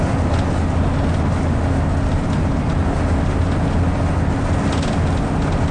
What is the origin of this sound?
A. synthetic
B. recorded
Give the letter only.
B